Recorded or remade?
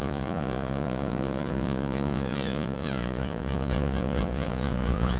remade